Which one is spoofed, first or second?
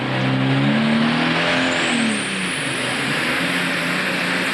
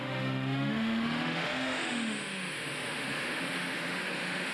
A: second